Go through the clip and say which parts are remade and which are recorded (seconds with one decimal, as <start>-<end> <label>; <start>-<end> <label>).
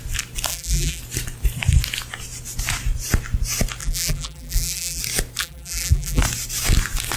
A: 0.0-0.5 recorded; 0.5-1.0 remade; 1.0-3.8 recorded; 3.8-5.0 remade; 5.0-5.4 recorded; 5.4-6.2 remade; 6.2-7.2 recorded